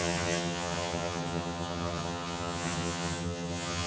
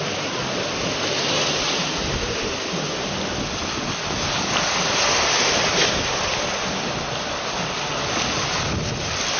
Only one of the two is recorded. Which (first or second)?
second